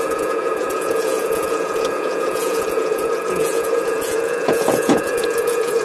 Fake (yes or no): yes